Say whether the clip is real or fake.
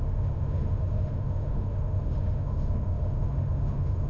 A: fake